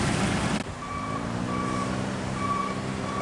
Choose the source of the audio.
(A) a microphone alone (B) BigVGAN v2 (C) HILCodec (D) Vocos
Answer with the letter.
A